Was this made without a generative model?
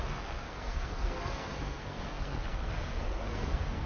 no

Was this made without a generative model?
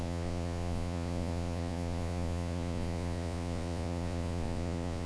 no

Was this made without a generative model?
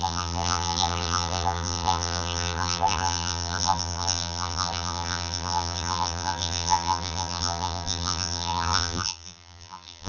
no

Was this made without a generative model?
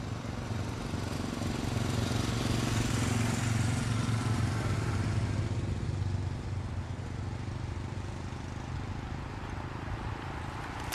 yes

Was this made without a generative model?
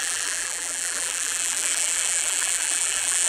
no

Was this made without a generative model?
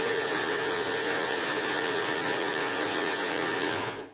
no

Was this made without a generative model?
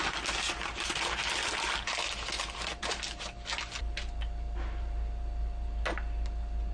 yes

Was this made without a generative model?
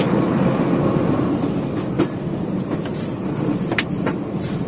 no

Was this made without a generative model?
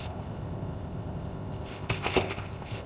no